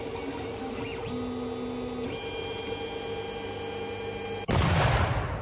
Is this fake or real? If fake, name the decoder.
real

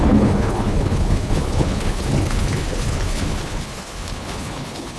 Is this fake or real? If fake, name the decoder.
fake, codec, HILCodec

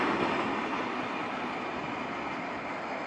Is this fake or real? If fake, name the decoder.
real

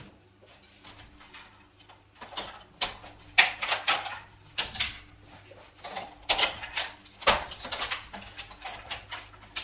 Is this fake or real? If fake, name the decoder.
real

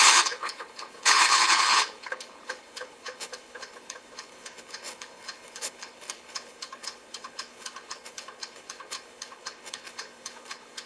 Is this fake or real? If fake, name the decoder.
fake, codec, HILCodec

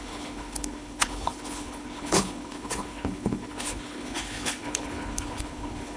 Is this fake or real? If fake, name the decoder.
fake, codec, HILCodec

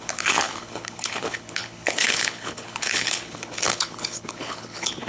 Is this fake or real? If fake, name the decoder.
fake, codec, HILCodec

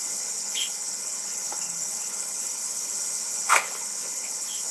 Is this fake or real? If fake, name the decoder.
fake, codec, HILCodec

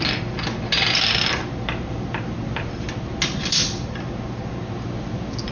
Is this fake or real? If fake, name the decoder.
real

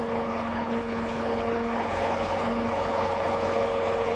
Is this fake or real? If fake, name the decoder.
fake, codec, HILCodec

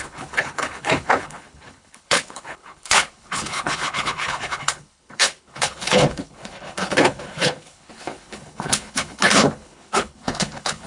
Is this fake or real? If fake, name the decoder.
fake, codec, HILCodec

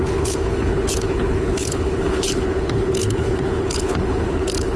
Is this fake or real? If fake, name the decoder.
fake, codec, HILCodec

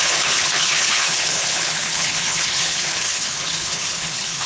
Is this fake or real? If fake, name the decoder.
fake, codec, HILCodec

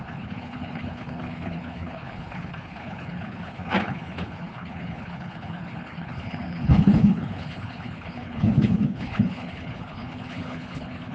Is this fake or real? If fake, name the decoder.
fake, codec, HILCodec